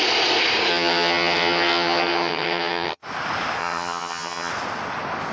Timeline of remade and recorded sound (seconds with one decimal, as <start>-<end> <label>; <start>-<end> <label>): 0.0-0.7 recorded; 0.7-3.0 remade; 3.0-3.6 recorded; 3.6-4.5 remade; 4.5-5.3 recorded